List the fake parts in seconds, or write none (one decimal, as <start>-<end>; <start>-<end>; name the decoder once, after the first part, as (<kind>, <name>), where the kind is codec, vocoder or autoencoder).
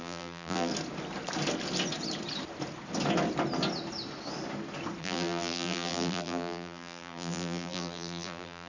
0.0-0.7 (vocoder, BigVGAN v2); 5.0-8.7